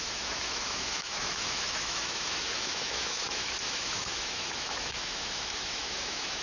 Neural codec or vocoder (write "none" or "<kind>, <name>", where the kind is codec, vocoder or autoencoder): autoencoder, DAC-VAE